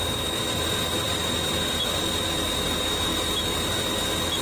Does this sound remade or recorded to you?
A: recorded